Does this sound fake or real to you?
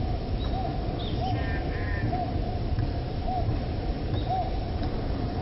real